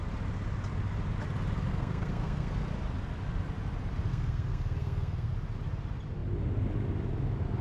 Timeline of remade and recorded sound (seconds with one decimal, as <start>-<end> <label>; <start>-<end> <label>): 0.0-1.7 recorded; 1.7-2.5 remade; 2.5-4.1 recorded; 4.1-5.3 remade; 5.3-7.6 recorded